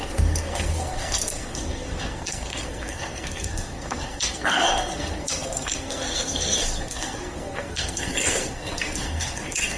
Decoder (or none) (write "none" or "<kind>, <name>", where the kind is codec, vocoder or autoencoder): codec, SNAC